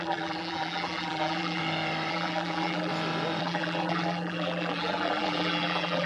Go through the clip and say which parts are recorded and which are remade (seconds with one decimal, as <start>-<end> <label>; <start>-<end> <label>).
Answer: 0.0-1.6 remade; 1.6-2.1 recorded; 2.1-2.9 remade; 2.9-3.4 recorded; 3.4-6.1 remade